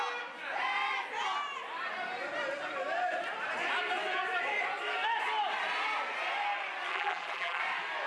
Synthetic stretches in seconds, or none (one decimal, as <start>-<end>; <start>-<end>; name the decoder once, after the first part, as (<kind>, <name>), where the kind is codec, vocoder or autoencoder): 6.9-7.6 (vocoder, BigVGAN v2)